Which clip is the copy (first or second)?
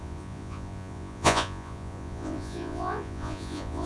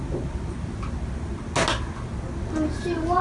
first